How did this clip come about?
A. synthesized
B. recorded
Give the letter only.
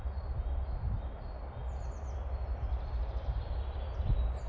B